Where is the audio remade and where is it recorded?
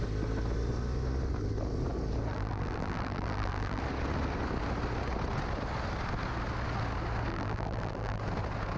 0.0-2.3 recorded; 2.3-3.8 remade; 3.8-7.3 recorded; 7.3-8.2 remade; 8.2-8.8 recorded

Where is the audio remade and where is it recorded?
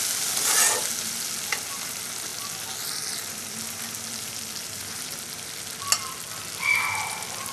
0.0-7.5 recorded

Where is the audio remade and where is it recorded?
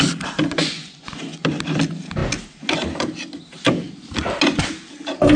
0.0-0.6 recorded; 0.6-1.4 remade; 1.4-5.4 recorded